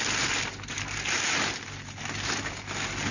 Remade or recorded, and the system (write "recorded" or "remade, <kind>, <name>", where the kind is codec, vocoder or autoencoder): recorded